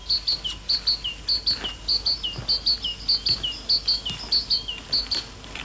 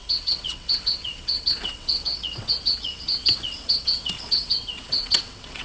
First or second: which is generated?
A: second